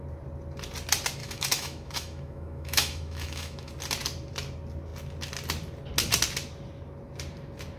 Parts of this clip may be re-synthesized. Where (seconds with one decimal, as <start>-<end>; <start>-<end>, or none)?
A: 1.2-3.7